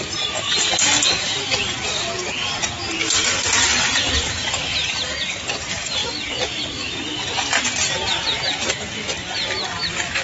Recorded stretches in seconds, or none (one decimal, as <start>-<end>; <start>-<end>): 0.0-10.2